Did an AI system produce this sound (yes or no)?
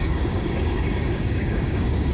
yes